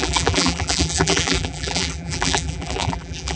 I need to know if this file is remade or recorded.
remade